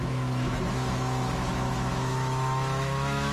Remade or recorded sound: remade